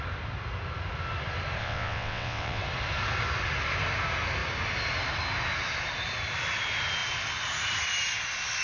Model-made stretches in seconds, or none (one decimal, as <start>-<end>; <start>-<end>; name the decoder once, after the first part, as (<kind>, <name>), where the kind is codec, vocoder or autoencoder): 1.6-2.6 (vocoder, WaveNeXt)